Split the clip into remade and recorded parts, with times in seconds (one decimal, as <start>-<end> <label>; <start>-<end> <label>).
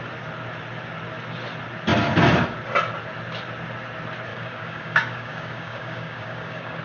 0.0-4.3 recorded; 4.3-6.8 remade